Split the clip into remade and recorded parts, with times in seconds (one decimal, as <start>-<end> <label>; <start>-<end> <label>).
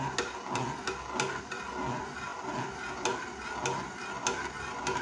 0.0-5.0 recorded